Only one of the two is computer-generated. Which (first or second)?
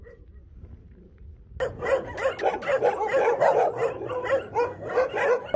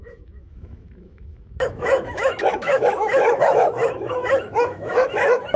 second